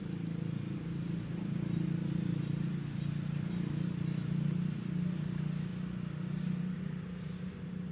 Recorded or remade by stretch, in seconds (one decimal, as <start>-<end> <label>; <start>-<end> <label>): 0.0-7.9 recorded